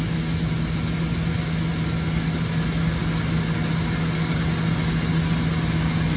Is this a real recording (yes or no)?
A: yes